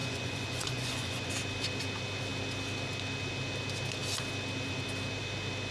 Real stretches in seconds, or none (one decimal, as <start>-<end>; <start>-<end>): 1.3-5.7